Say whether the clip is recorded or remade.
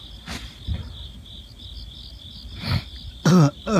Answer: recorded